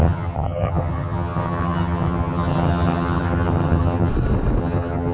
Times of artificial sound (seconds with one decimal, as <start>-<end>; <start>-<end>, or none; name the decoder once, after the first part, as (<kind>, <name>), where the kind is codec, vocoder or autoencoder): 0.0-4.1 (vocoder, HiFi-GAN); 4.6-5.1